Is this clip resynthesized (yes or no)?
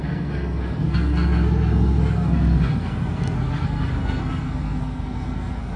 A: yes